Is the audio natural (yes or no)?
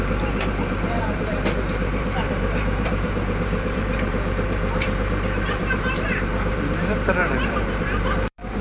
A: no